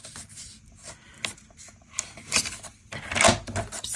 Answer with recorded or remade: recorded